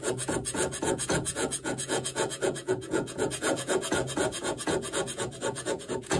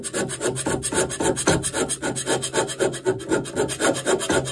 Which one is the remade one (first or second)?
first